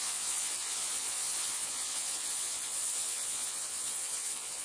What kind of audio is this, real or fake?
fake